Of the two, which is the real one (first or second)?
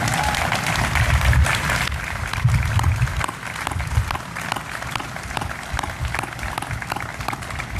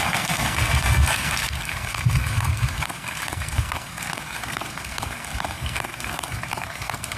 first